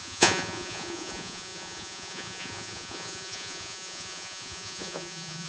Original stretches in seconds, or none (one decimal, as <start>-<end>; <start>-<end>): none